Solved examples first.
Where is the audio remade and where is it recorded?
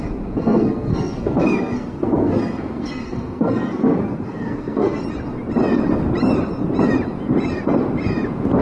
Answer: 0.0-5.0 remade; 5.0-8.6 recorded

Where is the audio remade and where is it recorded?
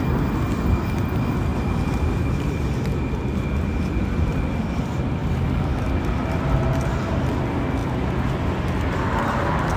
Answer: 0.0-5.2 recorded; 5.2-5.7 remade; 5.7-9.8 recorded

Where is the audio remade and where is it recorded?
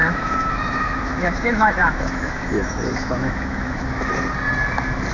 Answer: 0.0-4.1 remade; 4.1-5.1 recorded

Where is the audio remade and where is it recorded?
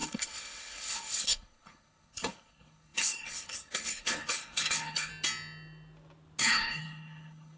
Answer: 0.0-5.1 remade; 5.1-6.4 recorded; 6.4-7.6 remade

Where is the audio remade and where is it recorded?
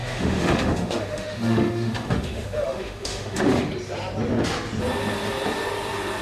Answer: 0.0-3.7 remade; 3.7-6.2 recorded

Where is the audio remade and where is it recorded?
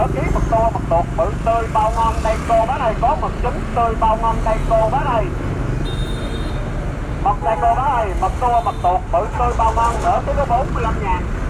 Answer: 0.0-1.5 recorded; 1.5-2.8 remade; 2.8-11.5 recorded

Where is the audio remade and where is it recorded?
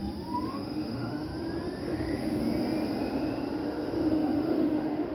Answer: 0.0-0.5 recorded; 0.5-1.3 remade; 1.3-1.8 recorded; 1.8-2.4 remade; 2.4-4.1 recorded; 4.1-5.1 remade